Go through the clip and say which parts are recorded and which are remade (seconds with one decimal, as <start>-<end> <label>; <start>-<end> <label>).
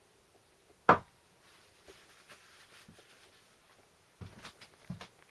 0.0-5.3 recorded